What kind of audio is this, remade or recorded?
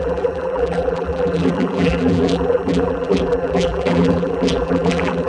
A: remade